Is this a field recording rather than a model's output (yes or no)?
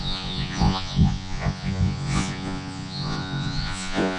no